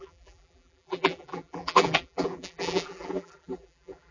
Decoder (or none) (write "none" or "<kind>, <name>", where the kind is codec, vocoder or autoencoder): vocoder, BigVGAN v2